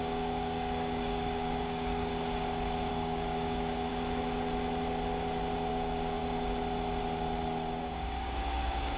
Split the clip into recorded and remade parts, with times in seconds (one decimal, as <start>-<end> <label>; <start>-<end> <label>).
0.0-2.1 remade; 2.1-2.9 recorded; 2.9-3.9 remade; 3.9-5.7 recorded; 5.7-6.2 remade; 6.2-7.8 recorded; 7.8-9.0 remade